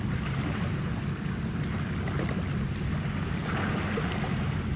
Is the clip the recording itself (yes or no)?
yes